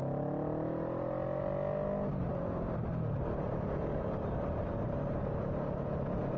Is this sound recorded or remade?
recorded